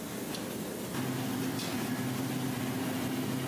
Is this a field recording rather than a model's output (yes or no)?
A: yes